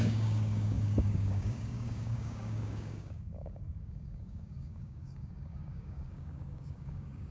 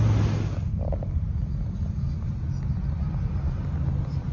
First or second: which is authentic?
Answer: second